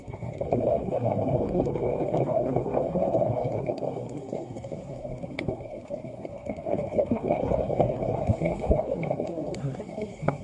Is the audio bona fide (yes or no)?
no